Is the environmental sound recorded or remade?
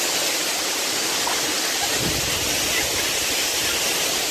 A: recorded